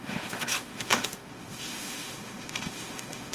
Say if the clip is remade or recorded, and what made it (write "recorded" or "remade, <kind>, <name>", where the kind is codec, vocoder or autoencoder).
remade, autoencoder, DAC-VAE